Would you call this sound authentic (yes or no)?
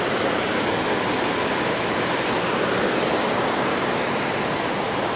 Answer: yes